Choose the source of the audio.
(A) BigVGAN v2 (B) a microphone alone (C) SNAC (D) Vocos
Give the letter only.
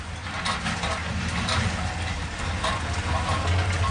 B